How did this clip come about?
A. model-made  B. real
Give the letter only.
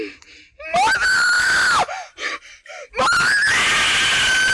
B